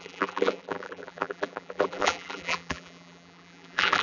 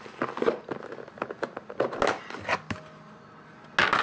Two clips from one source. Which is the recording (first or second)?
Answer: second